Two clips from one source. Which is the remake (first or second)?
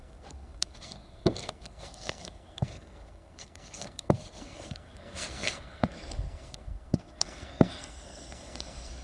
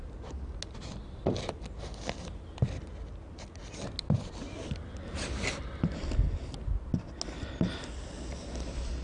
first